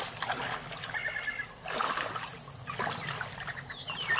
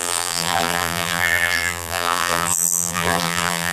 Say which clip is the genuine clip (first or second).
first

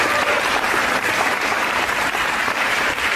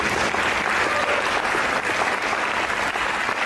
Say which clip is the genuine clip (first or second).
second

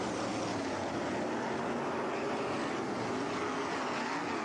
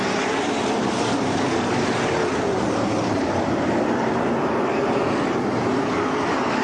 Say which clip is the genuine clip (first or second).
first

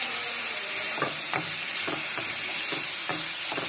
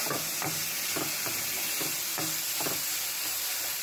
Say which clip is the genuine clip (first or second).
second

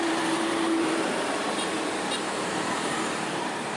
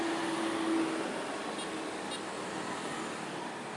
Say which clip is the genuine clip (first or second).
second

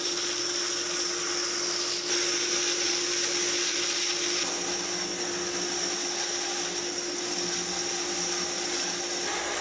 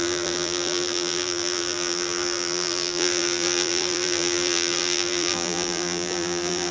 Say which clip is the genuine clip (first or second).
first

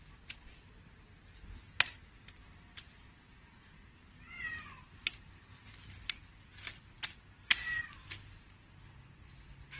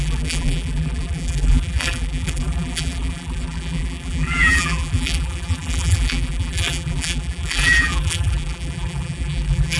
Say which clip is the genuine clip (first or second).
first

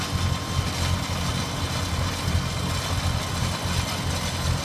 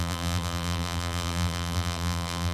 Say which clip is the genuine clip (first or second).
first